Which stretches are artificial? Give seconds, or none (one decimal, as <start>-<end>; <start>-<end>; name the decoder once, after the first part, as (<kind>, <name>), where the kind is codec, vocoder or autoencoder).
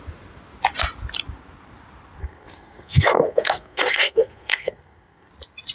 2.2-5.3 (codec, SNAC)